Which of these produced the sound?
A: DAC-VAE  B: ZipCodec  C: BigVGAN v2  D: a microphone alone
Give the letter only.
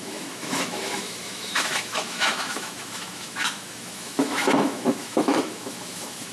A